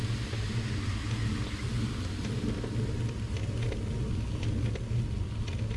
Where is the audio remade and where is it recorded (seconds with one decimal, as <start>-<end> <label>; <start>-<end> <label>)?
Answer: 0.0-5.8 recorded